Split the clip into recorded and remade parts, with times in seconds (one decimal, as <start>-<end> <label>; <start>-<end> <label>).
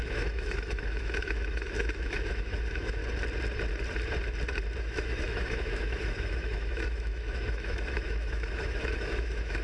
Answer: 0.0-3.0 remade; 3.0-4.8 recorded; 4.8-9.6 remade